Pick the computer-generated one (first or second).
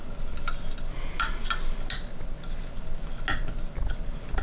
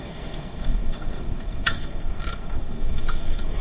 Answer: second